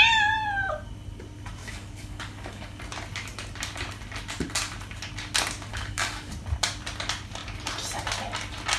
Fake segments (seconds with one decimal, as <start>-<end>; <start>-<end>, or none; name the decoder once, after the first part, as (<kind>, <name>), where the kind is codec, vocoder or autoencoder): 1.6-2.8 (codec, DAC); 5.7-6.3